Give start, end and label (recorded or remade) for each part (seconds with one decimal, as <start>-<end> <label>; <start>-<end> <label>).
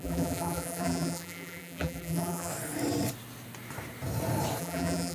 0.0-2.5 remade; 2.5-4.6 recorded; 4.6-5.1 remade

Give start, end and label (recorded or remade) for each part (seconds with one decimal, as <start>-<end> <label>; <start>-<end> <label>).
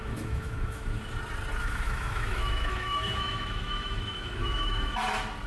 0.0-1.1 remade; 1.1-1.6 recorded; 1.6-4.9 remade; 4.9-5.5 recorded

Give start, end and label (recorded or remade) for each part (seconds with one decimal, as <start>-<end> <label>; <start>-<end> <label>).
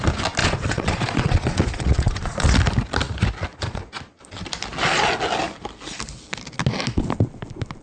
0.0-0.4 recorded; 0.4-2.5 remade; 2.5-3.5 recorded; 3.5-4.2 remade; 4.2-7.8 recorded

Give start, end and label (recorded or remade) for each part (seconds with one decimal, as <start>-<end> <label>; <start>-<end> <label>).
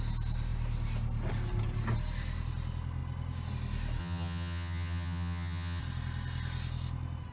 0.0-4.0 recorded; 4.0-5.8 remade; 5.8-7.3 recorded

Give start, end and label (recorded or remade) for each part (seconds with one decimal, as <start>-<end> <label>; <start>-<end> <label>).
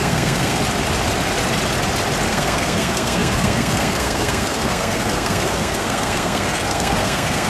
0.0-0.6 remade; 0.6-2.3 recorded; 2.3-7.5 remade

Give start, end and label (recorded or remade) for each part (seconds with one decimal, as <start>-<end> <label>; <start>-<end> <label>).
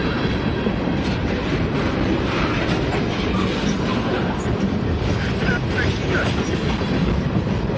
0.0-7.8 recorded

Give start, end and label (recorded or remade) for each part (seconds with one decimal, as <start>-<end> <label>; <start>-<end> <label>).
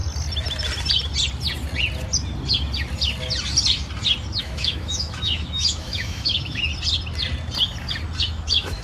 0.0-4.4 recorded; 4.4-6.7 remade; 6.7-8.2 recorded; 8.2-8.8 remade